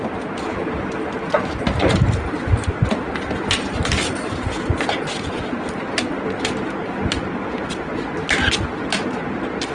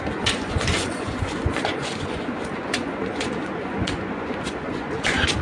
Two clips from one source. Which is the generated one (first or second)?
second